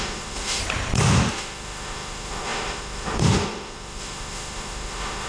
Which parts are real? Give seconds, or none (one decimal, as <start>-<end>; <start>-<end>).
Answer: 0.6-1.3